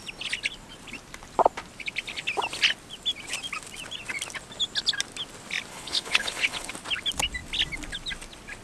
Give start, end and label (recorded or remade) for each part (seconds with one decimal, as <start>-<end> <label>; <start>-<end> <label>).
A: 0.0-5.7 recorded; 5.7-6.7 remade; 6.7-8.6 recorded